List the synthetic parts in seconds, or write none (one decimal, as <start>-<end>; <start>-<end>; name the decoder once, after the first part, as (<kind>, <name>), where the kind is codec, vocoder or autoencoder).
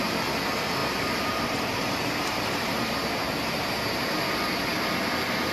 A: 0.8-4.1 (vocoder, BigVGAN v2)